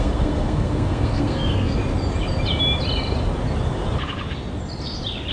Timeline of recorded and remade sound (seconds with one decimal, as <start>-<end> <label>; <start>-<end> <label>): 0.0-1.8 remade; 1.8-5.3 recorded